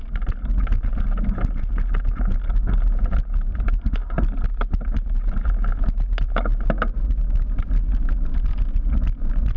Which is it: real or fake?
real